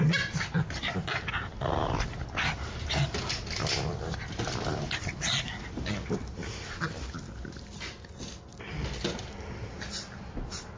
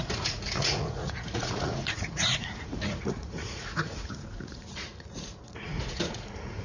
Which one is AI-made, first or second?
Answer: second